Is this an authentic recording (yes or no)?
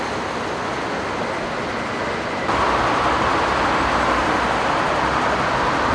yes